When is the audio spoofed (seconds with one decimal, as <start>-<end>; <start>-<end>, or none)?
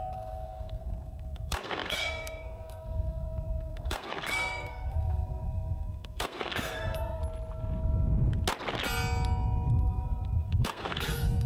0.0-7.2; 9.7-11.5